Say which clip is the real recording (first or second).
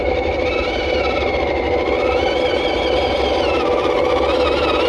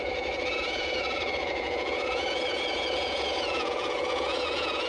first